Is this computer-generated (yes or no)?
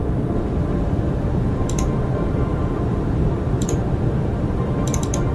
yes